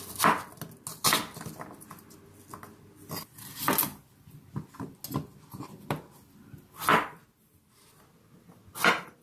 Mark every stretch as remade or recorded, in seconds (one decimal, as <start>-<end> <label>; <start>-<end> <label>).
0.0-9.2 recorded